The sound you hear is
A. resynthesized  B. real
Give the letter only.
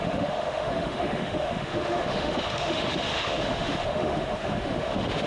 A